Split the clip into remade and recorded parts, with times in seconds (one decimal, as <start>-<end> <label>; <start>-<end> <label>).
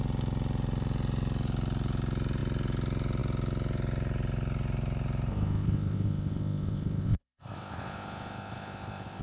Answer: 0.0-5.3 recorded; 5.3-9.2 remade